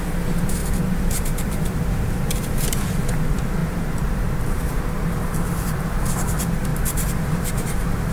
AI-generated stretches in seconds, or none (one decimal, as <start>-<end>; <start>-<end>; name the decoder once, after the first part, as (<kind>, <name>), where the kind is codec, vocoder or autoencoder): 0.0-8.1 (vocoder, BigVGAN v2)